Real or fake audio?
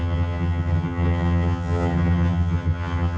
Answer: fake